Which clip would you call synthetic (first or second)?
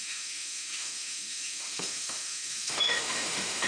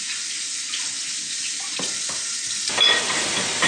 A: first